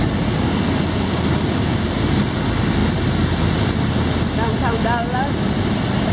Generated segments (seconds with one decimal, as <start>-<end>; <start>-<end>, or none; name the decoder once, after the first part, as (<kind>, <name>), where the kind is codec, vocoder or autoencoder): none